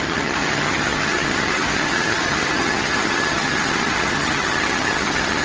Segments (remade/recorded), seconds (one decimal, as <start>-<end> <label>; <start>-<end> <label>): 0.0-5.4 remade